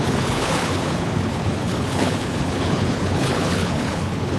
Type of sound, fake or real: fake